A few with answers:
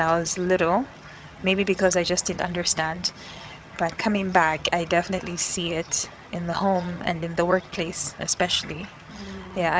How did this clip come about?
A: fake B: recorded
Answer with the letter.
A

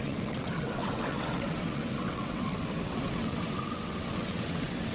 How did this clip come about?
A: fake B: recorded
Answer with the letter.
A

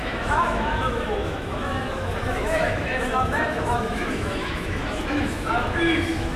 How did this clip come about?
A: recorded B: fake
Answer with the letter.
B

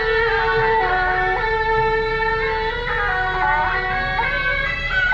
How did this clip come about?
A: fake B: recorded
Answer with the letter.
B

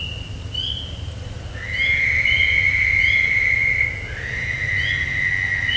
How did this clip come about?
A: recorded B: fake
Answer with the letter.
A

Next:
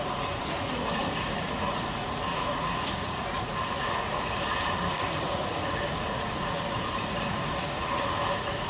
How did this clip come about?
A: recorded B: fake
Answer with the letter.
B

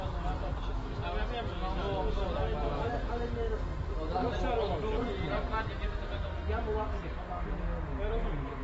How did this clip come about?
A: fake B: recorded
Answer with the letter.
B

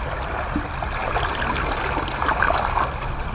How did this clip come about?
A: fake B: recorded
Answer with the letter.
B